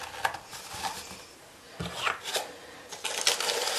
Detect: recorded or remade recorded